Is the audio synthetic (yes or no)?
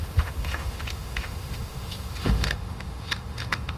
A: yes